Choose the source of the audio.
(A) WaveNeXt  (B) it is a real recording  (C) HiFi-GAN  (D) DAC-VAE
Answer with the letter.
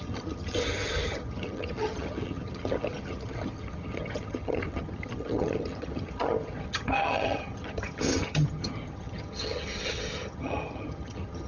C